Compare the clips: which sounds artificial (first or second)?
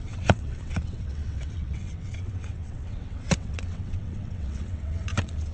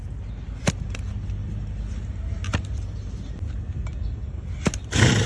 first